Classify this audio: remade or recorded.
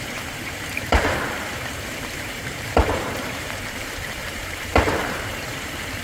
remade